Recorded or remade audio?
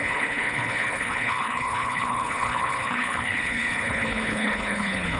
remade